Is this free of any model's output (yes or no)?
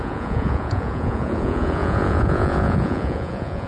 no